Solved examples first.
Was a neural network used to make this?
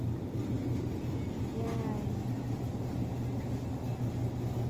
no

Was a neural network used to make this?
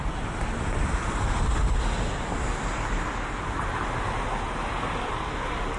no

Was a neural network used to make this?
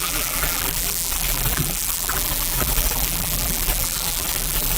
yes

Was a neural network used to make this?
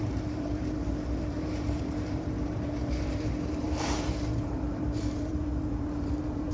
yes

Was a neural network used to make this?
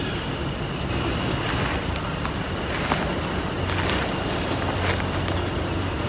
no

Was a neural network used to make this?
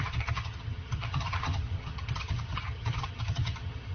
yes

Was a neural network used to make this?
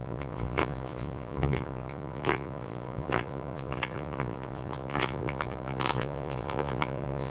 yes